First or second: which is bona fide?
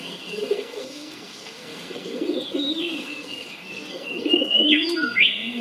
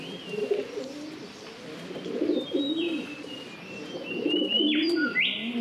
second